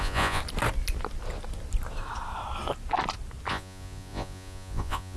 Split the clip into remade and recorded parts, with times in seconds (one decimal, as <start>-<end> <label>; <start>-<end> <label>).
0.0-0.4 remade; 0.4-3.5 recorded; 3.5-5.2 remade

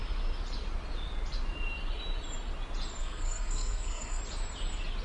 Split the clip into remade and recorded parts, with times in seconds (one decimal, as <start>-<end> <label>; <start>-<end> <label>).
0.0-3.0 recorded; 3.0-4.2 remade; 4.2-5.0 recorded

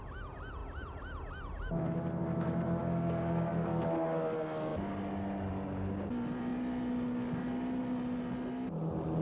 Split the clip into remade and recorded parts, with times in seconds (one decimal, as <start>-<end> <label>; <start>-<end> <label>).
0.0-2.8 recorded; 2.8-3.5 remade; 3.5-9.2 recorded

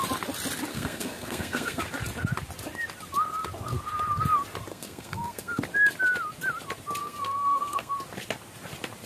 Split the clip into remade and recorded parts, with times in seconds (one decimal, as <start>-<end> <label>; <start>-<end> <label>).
0.0-0.7 recorded; 0.7-1.8 remade; 1.8-4.7 recorded; 4.7-5.6 remade; 5.6-7.0 recorded; 7.0-7.9 remade; 7.9-9.1 recorded

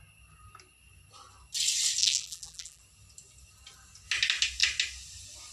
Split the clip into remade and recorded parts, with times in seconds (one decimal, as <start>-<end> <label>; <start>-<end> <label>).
0.0-2.0 recorded; 2.0-2.8 remade; 2.8-5.5 recorded